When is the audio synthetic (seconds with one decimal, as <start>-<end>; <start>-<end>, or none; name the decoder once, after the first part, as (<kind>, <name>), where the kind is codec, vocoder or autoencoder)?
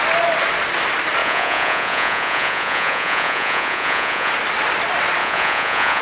1.2-4.3 (vocoder, Vocos); 5.2-6.0